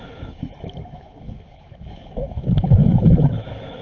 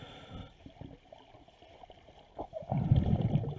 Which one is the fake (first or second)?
first